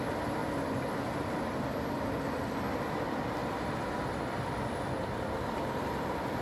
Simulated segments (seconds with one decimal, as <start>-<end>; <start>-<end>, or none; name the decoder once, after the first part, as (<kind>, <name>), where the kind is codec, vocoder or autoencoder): none